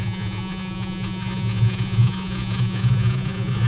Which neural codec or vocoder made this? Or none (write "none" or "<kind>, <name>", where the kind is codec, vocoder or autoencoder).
vocoder, Vocos